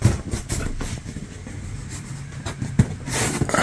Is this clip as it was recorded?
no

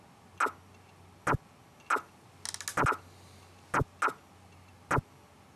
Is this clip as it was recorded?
yes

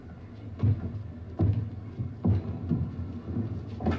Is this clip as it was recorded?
yes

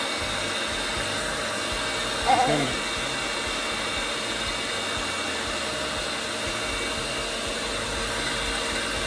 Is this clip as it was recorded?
yes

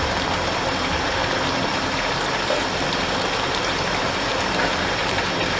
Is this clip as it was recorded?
no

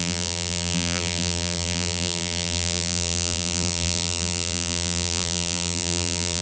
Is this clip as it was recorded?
no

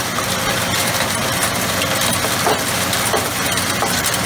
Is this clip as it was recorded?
yes